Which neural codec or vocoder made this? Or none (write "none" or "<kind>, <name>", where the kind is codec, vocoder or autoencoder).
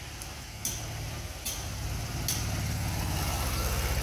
none